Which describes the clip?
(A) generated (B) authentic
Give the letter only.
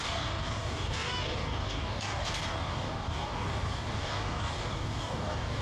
A